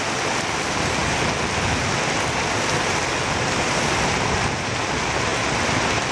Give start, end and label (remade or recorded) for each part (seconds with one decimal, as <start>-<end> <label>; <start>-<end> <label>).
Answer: 0.0-6.1 recorded